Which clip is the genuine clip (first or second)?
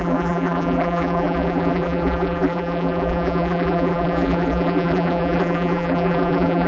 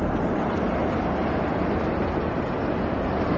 second